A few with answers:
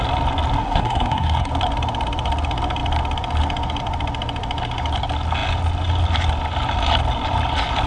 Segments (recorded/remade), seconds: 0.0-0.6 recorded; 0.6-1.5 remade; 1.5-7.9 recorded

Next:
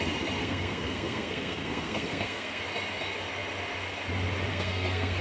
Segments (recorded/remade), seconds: 0.0-0.4 recorded; 0.4-2.6 remade; 2.6-4.5 recorded; 4.5-5.2 remade